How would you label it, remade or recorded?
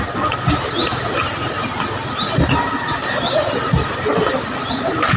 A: recorded